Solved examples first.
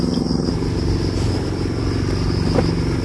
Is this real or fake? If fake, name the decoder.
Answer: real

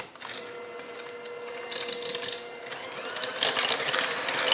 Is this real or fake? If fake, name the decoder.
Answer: real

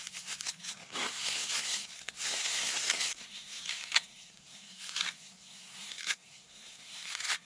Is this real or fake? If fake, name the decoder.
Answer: fake, codec, SNAC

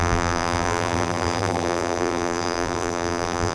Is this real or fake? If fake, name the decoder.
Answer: fake, vocoder, BigVGAN v2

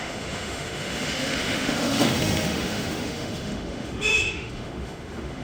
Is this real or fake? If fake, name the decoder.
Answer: fake, autoencoder, DAC-VAE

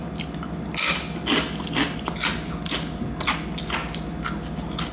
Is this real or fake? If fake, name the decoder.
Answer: real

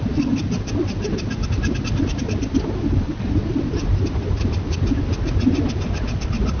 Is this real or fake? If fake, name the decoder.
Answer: real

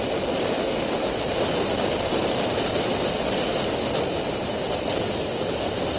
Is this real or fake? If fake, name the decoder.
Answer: real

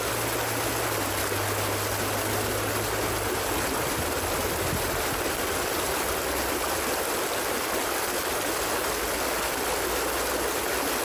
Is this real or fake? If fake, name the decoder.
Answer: real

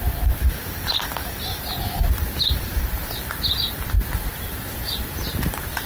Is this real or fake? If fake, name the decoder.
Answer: fake, vocoder, BigVGAN v2